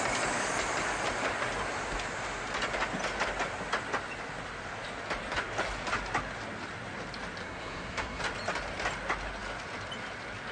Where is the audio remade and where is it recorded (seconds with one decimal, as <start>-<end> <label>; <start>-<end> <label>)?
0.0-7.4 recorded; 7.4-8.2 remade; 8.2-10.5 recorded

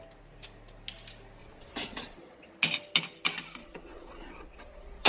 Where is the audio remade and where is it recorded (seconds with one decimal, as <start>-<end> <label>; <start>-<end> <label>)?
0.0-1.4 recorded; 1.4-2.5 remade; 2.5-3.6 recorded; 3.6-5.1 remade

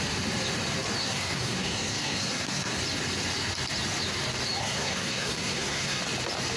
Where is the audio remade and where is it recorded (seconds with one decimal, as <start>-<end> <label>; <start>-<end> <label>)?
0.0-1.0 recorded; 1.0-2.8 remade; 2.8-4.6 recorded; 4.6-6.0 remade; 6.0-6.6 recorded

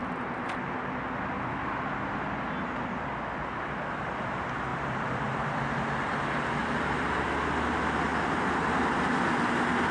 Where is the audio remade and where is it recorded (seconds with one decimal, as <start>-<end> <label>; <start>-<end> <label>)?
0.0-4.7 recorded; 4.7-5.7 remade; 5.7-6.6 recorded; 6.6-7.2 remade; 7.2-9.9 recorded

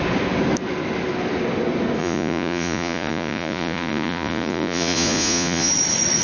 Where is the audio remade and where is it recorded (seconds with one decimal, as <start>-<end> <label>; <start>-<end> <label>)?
0.0-2.0 recorded; 2.0-5.7 remade; 5.7-6.2 recorded